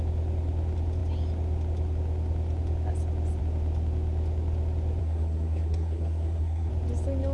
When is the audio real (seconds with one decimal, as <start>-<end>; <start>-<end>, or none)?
0.0-5.0; 6.7-7.3